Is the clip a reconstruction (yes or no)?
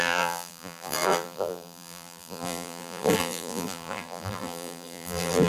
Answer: yes